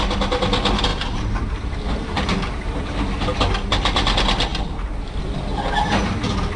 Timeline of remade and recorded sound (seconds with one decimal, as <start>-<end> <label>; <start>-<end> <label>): 0.0-0.9 recorded; 0.9-3.2 remade; 3.2-4.5 recorded; 4.5-5.2 remade; 5.2-6.6 recorded